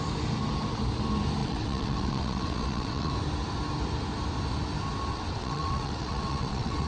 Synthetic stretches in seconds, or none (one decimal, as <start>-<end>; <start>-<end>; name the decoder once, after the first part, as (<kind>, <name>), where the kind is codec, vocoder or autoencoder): 1.4-3.1 (vocoder, WaveNeXt); 5.1-6.9